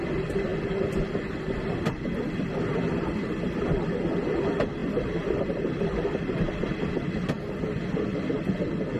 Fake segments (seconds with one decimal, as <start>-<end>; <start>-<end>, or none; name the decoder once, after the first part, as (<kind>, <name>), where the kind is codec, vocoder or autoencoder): none